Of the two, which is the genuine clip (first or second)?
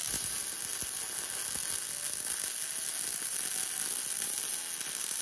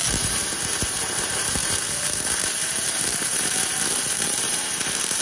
first